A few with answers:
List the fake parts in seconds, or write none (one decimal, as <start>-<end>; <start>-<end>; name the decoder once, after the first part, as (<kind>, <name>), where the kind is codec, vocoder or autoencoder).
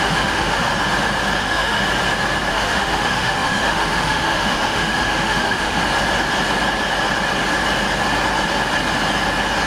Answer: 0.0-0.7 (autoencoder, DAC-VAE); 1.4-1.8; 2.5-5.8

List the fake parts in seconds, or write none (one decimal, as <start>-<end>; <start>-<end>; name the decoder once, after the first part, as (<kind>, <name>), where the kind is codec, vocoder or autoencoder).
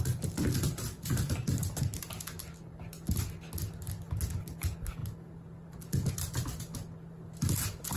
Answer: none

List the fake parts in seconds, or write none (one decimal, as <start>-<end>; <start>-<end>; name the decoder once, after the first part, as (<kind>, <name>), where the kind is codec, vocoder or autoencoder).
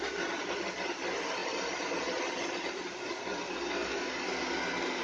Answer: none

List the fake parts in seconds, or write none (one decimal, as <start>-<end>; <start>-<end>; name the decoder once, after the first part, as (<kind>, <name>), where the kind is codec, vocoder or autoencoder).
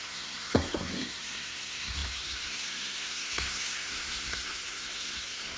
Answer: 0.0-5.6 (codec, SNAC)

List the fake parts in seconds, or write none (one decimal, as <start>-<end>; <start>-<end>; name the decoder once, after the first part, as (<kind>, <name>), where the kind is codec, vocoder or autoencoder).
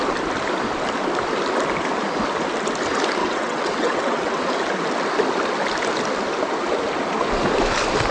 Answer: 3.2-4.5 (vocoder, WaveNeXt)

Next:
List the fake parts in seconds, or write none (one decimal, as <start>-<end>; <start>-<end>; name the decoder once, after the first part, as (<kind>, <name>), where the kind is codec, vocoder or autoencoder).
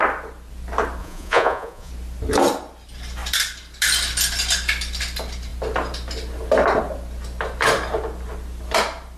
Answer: 1.0-1.9 (vocoder, Vocos)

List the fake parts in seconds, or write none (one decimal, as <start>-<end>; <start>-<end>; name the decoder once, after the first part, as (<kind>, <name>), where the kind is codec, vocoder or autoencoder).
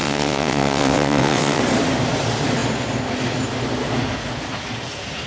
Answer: 0.0-1.6 (vocoder, WaveNeXt)